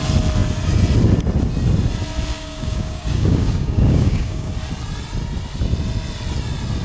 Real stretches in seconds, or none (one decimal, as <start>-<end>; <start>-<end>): 0.0-2.3; 4.5-6.8